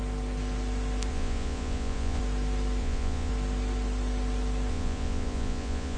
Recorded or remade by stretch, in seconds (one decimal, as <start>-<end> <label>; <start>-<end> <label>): 0.0-1.1 recorded; 1.1-2.2 remade; 2.2-2.8 recorded; 2.8-3.3 remade; 3.3-4.7 recorded; 4.7-6.0 remade